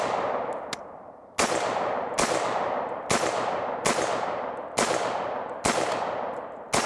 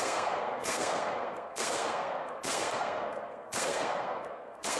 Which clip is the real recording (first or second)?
first